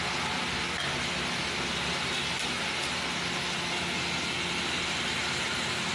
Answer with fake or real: real